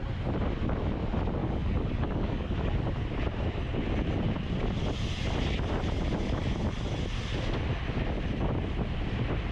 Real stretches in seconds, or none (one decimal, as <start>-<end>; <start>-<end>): 0.0-1.4; 2.7-9.5